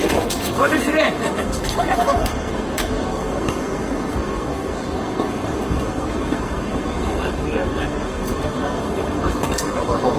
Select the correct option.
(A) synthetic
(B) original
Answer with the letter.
A